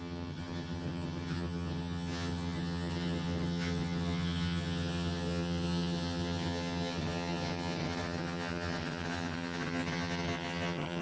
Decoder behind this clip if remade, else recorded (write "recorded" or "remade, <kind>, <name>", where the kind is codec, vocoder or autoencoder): remade, vocoder, HiFi-GAN